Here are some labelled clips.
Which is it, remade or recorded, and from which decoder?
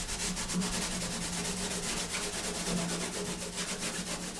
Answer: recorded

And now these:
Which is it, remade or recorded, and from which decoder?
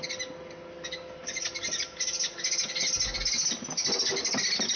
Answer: recorded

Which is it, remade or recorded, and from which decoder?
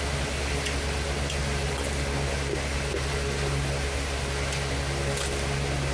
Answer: recorded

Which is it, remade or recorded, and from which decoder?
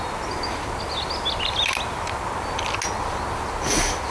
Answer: recorded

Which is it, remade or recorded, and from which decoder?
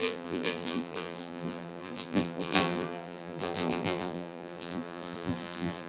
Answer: remade, vocoder, BigVGAN v2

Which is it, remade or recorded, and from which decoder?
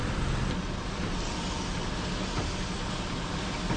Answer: recorded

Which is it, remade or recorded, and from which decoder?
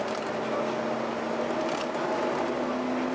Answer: recorded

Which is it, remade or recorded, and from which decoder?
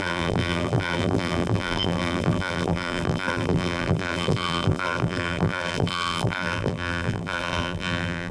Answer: remade, vocoder, BigVGAN v2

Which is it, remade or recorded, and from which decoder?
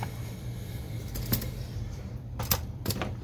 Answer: remade, vocoder, BigVGAN v2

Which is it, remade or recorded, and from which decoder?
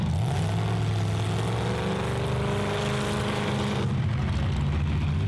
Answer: recorded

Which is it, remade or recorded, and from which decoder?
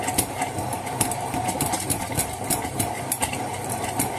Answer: remade, vocoder, BigVGAN v2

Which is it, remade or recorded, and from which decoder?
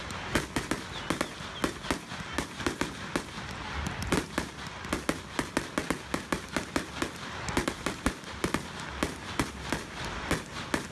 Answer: recorded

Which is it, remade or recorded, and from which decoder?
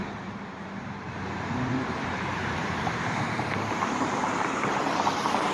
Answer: remade, vocoder, BigVGAN v2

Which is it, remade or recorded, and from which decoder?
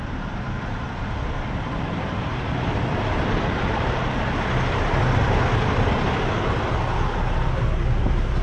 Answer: recorded